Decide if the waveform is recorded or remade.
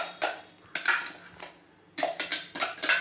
recorded